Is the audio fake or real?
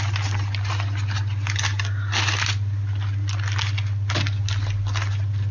real